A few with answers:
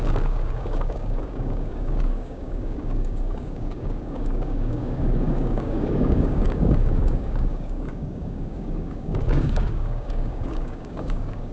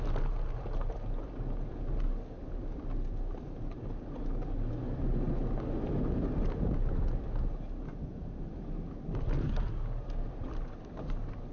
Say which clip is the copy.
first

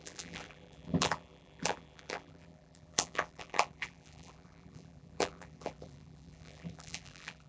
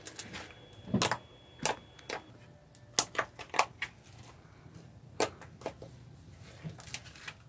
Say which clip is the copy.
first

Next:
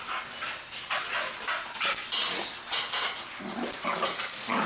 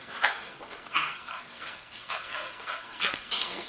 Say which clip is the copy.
second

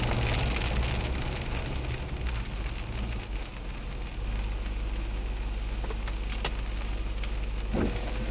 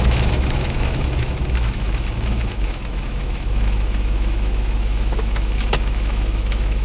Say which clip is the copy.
second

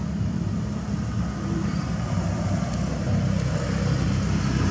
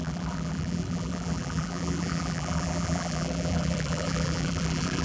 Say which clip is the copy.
second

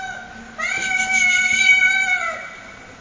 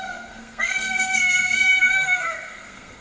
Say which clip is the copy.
second